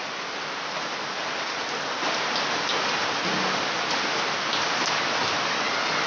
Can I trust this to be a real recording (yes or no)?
yes